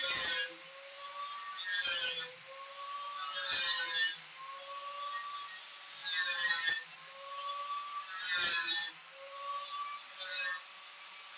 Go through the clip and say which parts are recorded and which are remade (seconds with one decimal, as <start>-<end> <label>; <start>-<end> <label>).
0.0-11.4 recorded